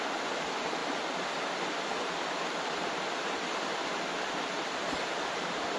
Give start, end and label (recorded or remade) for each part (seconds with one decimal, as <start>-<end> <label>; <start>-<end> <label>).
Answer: 0.0-5.8 recorded